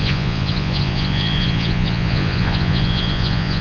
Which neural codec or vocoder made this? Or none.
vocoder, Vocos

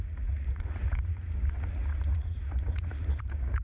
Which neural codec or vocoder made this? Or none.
vocoder, Vocos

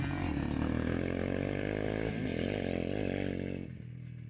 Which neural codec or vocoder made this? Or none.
none